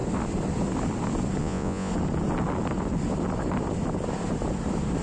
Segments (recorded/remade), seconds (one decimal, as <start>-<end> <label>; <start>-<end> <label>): 0.0-1.4 recorded; 1.4-1.9 remade; 1.9-5.0 recorded